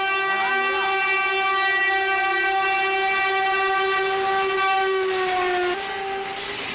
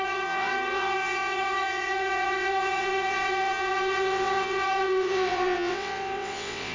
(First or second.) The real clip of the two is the first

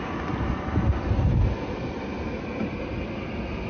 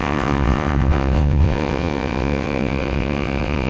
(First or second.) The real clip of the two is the first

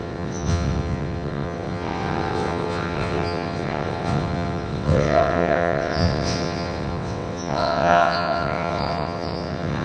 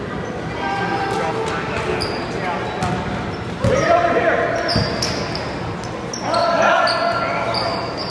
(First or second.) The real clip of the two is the second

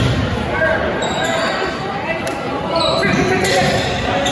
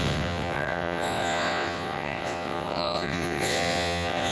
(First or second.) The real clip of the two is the first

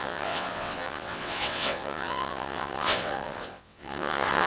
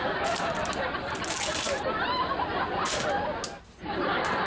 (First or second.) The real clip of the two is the second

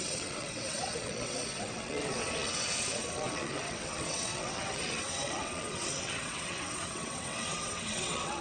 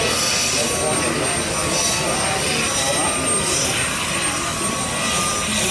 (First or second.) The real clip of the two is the second